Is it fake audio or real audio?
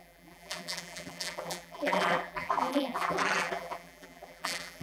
fake